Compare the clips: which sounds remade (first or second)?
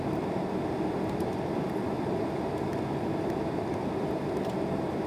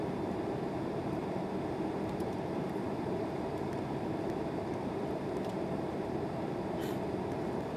second